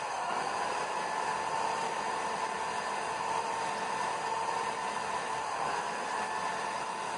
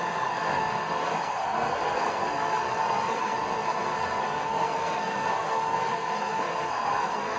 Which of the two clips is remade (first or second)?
second